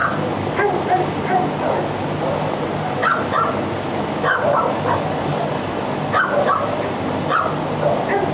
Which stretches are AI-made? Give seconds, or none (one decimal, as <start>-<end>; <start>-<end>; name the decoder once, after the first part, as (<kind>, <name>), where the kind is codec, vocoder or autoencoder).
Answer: none